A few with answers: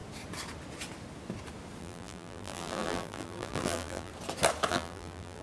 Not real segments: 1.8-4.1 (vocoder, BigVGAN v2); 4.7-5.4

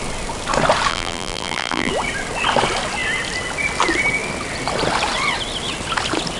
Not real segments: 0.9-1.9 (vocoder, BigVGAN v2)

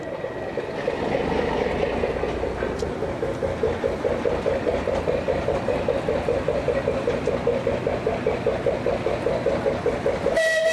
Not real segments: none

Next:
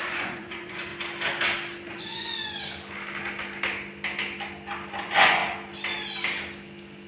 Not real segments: 0.0-0.9 (vocoder, Vocos); 1.9-2.4; 5.0-5.4